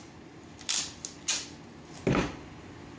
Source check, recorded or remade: recorded